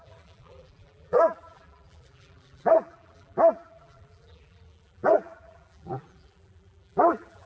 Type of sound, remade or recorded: remade